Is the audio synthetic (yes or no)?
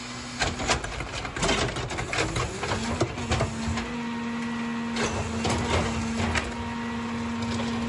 no